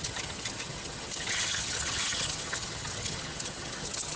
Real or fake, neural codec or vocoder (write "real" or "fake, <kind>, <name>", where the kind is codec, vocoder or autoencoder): fake, vocoder, HiFi-GAN